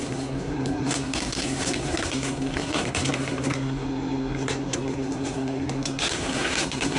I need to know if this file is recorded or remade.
remade